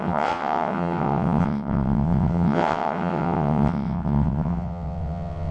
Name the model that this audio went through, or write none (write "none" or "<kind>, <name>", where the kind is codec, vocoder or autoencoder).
vocoder, WaveNeXt